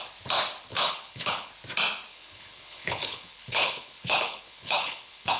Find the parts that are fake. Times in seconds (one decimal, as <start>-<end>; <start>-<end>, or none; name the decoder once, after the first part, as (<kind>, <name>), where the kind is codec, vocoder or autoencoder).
0.7-1.5 (codec, HILCodec); 2.1-5.4